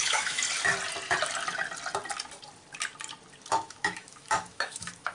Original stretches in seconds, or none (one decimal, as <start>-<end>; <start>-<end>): 0.4-3.5